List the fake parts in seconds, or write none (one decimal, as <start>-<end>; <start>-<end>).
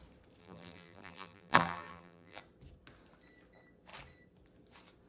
0.4-2.4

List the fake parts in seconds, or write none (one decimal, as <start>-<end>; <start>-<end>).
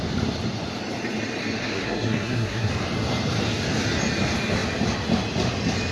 1.6-2.7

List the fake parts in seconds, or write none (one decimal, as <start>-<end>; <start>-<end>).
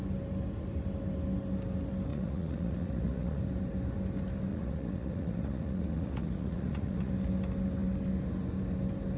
2.1-3.4; 4.5-7.1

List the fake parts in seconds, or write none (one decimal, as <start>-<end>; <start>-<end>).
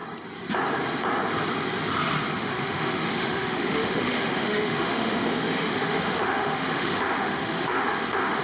2.4-8.4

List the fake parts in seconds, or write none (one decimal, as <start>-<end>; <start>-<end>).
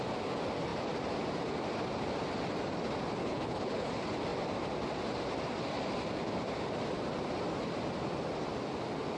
3.2-3.9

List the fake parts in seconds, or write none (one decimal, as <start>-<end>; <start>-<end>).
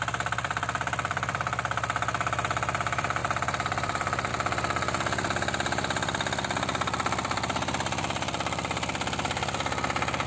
0.0-10.3